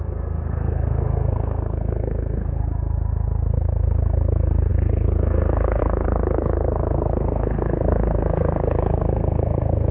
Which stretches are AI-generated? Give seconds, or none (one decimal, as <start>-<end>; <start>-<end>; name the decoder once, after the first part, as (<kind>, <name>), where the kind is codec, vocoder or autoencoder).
0.0-2.6 (codec, SNAC); 3.5-9.9